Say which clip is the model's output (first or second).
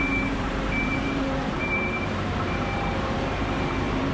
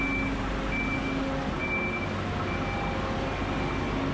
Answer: first